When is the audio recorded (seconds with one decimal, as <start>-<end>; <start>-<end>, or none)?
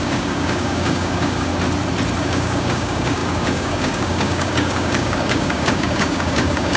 1.5-2.2